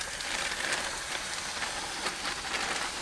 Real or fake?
real